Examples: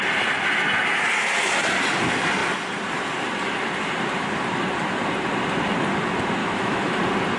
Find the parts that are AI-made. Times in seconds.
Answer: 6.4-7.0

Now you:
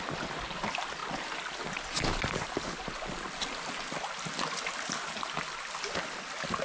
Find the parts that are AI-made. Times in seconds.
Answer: none

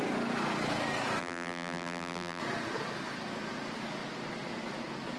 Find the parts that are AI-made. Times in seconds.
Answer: 1.2-2.4

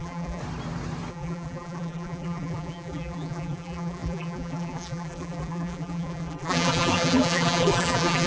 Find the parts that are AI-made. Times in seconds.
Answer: 0.0-0.4; 1.1-8.3

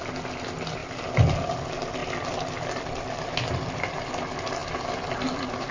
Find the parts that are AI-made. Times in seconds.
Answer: none